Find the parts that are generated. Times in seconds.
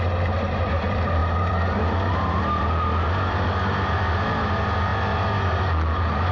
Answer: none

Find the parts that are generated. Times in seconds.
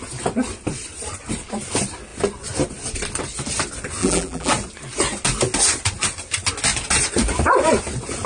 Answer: 4.0-4.5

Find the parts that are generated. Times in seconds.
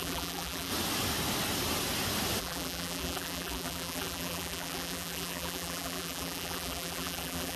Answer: 0.0-0.7; 2.4-7.6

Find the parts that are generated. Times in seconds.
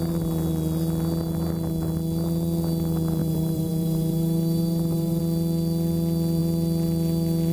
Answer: 3.2-5.2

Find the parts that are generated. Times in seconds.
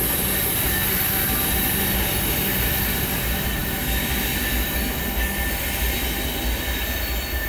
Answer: none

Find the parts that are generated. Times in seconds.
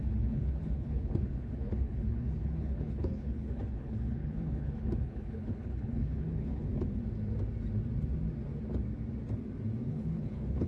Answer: 0.0-6.7; 9.9-10.7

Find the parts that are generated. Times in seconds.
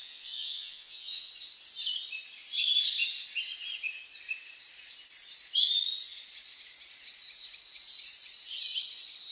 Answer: 0.0-1.3